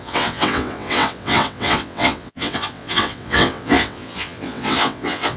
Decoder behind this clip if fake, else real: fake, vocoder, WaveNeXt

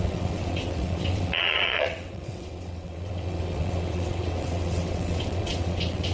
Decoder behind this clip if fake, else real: fake, vocoder, WaveNeXt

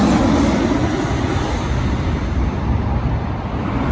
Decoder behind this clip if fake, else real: real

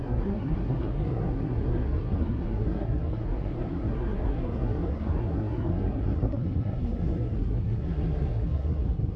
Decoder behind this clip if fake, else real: fake, codec, SNAC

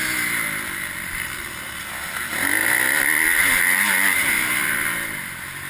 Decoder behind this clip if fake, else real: real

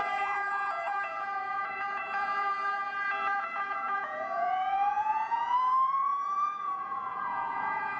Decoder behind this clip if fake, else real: fake, vocoder, Vocos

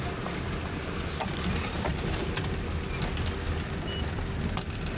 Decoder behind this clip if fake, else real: real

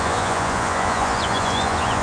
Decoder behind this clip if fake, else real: fake, vocoder, Vocos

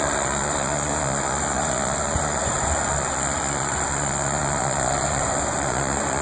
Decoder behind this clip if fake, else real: fake, vocoder, Vocos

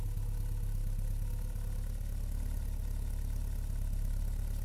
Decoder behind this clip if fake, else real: real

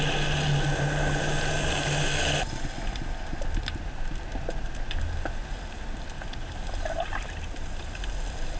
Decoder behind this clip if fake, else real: real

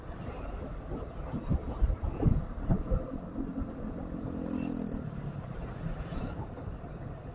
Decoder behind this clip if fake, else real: real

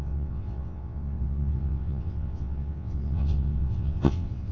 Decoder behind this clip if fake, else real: fake, vocoder, WaveNeXt